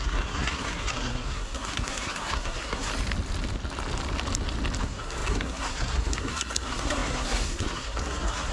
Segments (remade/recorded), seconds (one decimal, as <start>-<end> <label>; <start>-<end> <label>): 0.0-2.9 remade; 2.9-4.8 recorded; 4.8-8.5 remade